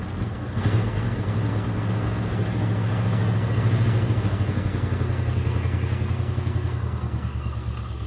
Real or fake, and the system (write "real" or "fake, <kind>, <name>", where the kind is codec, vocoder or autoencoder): fake, codec, SNAC